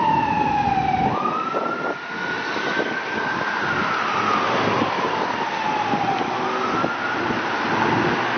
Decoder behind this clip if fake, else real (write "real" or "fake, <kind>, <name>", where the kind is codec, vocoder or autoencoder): real